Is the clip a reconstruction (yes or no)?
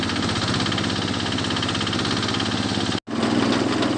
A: no